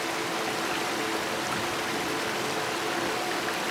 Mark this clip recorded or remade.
recorded